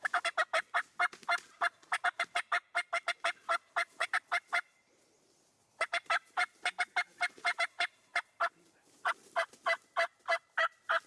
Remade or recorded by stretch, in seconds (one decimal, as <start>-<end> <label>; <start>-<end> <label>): 0.0-4.0 recorded; 4.0-6.5 remade; 6.5-7.1 recorded; 7.1-7.6 remade; 7.6-11.1 recorded